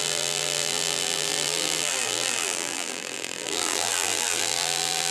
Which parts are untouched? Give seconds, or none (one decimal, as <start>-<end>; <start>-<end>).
none